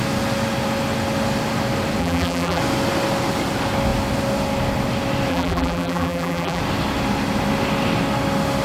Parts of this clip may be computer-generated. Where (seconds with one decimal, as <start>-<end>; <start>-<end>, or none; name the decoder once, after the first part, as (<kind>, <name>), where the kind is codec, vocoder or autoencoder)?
2.0-2.6 (vocoder, BigVGAN v2); 5.3-6.6